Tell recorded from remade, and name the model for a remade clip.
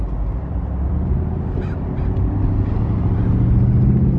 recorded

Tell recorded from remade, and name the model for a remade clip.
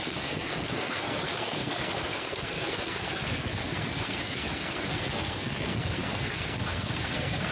remade, codec, SNAC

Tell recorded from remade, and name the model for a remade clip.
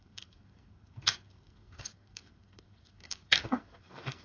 remade, codec, SNAC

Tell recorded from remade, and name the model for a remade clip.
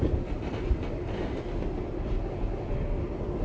recorded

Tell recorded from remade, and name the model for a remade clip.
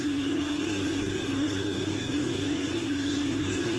remade, codec, SNAC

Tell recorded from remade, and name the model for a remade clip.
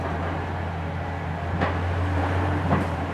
recorded